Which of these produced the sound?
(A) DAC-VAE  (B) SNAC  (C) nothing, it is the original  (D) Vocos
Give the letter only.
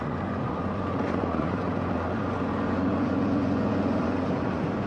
D